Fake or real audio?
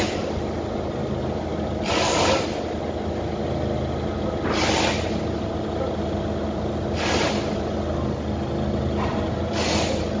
real